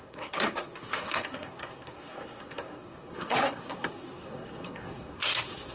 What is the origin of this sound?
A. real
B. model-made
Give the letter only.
B